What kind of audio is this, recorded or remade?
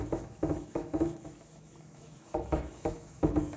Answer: remade